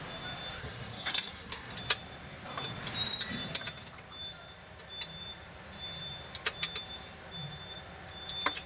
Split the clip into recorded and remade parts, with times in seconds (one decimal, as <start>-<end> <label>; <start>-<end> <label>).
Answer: 0.0-0.6 recorded; 0.6-1.7 remade; 1.7-8.7 recorded